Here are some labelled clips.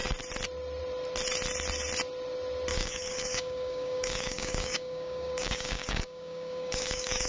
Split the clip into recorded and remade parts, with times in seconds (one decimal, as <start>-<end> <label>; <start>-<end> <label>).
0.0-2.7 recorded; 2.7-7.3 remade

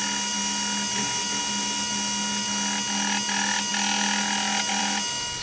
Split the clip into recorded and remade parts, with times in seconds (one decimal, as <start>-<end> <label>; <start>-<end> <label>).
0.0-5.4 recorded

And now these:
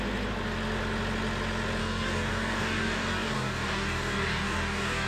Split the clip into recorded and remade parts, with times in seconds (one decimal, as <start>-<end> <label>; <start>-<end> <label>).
0.0-1.8 recorded; 1.8-5.1 remade